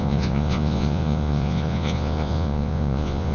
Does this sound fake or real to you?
fake